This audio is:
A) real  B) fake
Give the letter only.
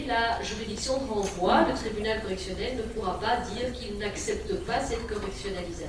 A